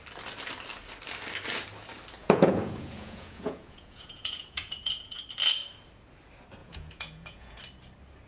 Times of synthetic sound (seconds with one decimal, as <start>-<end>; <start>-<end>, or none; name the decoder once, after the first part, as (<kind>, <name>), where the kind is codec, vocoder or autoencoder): 2.2-5.2 (vocoder, Vocos); 6.6-7.6